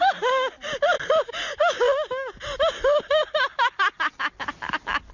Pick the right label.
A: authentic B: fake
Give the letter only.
A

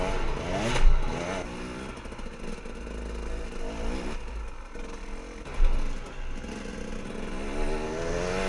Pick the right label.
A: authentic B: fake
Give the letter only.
A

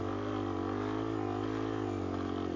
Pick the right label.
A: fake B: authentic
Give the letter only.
B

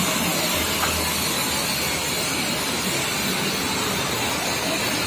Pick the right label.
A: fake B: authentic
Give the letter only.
B